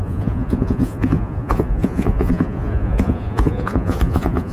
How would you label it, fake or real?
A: fake